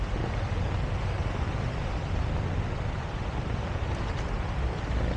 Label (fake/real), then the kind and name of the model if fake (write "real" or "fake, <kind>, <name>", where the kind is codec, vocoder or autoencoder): real